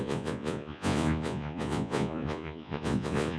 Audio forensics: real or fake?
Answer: fake